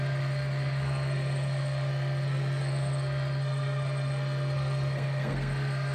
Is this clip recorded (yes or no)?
no